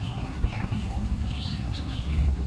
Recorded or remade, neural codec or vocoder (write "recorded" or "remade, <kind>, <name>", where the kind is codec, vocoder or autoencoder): remade, codec, SNAC